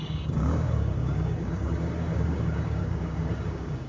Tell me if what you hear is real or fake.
fake